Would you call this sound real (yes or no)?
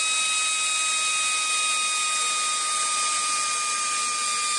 yes